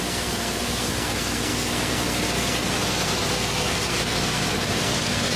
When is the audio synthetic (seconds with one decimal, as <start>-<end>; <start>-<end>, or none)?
0.0-5.4

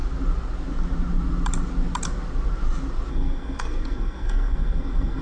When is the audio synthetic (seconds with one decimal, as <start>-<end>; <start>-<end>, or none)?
3.1-5.2

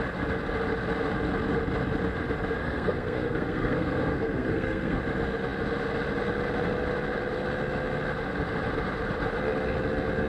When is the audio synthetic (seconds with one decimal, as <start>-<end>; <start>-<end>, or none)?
2.6-5.0

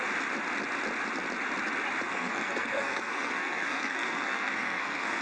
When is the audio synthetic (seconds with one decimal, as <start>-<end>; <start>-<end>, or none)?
2.1-5.2

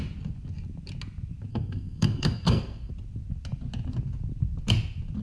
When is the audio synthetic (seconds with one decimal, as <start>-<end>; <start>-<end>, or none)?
1.5-2.9

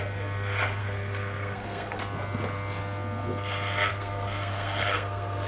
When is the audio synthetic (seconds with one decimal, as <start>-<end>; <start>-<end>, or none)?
0.8-2.0; 3.9-5.5